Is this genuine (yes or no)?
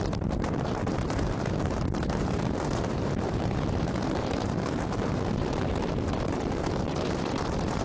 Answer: no